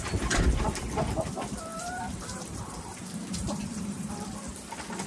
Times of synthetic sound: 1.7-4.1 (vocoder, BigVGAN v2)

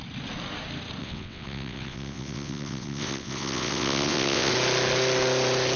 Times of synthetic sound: 1.0-4.5 (vocoder, WaveNeXt)

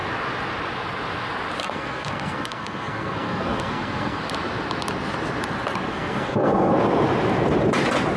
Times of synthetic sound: 1.6-4.2 (codec, SNAC); 5.9-6.7